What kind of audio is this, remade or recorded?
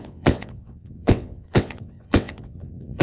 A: remade